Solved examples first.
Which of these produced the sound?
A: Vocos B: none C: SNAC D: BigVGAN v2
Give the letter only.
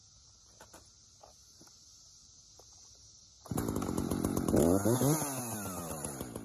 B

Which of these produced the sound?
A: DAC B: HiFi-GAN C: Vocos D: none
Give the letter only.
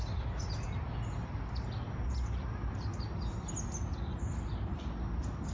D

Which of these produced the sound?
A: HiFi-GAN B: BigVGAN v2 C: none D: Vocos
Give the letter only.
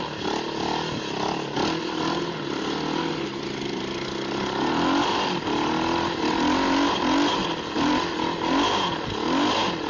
C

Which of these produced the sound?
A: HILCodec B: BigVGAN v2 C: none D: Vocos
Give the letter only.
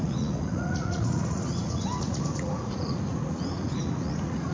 D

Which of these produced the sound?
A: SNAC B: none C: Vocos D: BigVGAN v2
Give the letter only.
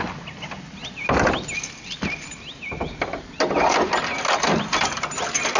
B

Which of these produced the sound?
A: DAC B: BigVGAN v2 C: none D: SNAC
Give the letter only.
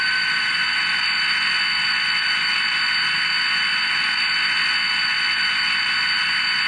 C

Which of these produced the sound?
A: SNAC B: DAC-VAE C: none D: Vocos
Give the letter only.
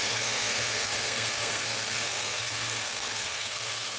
A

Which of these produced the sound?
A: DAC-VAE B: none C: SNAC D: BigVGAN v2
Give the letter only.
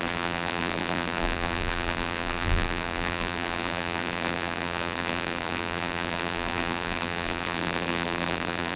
D